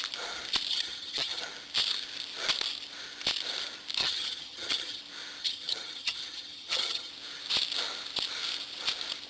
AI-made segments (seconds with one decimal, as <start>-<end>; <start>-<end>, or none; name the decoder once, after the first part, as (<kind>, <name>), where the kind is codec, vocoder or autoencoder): 0.7-1.4 (vocoder, HiFi-GAN); 4.0-5.0; 5.4-7.1

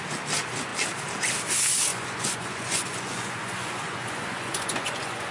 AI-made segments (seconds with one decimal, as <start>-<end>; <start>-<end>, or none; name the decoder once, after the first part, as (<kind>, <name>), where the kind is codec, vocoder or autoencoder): 1.9-5.3 (vocoder, Vocos)

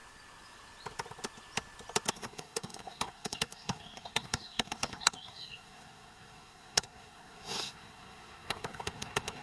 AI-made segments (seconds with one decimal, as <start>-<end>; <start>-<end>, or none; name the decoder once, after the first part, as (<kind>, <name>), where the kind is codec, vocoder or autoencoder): 2.1-9.4 (codec, SNAC)

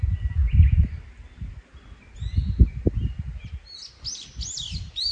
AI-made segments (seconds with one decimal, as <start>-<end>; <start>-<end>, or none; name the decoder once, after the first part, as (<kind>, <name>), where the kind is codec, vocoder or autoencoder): none